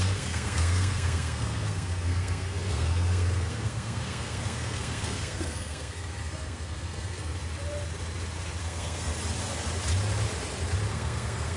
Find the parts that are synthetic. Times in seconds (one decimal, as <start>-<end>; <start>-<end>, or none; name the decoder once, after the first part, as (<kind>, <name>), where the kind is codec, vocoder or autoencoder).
0.0-7.3 (codec, SNAC); 8.6-9.1; 10.9-11.6